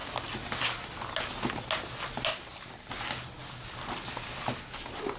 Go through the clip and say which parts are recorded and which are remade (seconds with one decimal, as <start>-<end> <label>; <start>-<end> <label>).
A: 0.0-2.3 recorded; 2.3-2.9 remade; 2.9-5.2 recorded